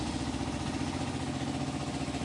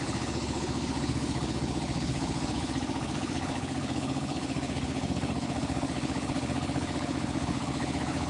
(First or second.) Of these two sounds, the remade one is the second